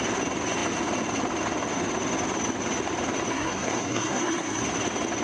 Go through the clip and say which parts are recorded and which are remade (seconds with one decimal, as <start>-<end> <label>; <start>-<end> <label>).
0.0-3.3 recorded; 3.3-4.6 remade; 4.6-5.2 recorded

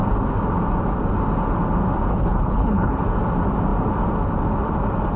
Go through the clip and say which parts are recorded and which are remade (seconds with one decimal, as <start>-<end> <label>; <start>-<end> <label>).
0.0-2.1 recorded; 2.1-3.0 remade; 3.0-5.2 recorded